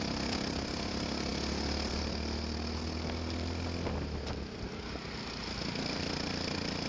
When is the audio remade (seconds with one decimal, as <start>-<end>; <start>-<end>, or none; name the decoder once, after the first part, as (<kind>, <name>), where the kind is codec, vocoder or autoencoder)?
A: none